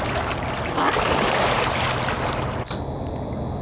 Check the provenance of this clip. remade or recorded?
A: recorded